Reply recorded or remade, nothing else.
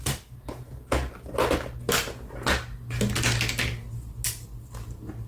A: recorded